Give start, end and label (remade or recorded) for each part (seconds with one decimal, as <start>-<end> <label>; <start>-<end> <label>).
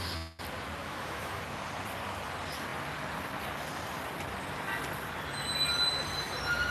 0.0-0.8 recorded; 0.8-1.4 remade; 1.4-6.7 recorded